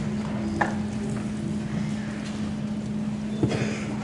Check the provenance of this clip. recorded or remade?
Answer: recorded